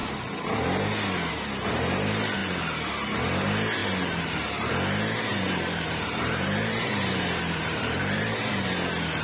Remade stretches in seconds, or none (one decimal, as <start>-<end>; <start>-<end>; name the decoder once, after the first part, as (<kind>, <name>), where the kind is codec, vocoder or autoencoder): 3.8-4.7 (vocoder, BigVGAN v2); 5.3-8.5